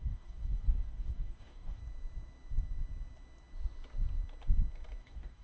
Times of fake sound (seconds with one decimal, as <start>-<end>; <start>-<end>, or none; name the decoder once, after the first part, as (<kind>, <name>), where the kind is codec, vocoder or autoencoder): 0.0-1.8 (codec, DAC); 5.0-5.4